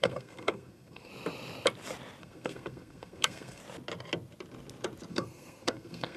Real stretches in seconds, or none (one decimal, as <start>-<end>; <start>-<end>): 1.1-2.2; 3.6-5.1